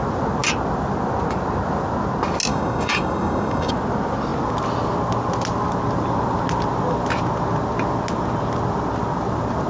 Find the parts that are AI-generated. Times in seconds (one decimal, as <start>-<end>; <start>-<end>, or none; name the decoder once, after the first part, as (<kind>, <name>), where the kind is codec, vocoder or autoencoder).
2.5-3.7 (codec, DAC)